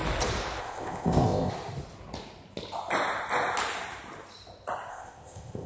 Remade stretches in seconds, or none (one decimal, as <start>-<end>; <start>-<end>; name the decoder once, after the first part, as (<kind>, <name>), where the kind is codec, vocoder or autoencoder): 0.6-1.5 (codec, ZipCodec); 4.9-5.7